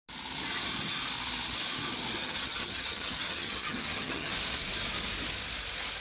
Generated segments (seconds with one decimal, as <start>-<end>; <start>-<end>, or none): 2.2-4.3